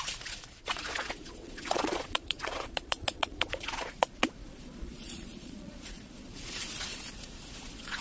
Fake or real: fake